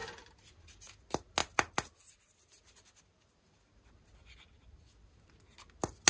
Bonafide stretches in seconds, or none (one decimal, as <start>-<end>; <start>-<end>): 0.0-6.1